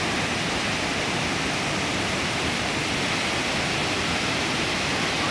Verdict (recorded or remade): recorded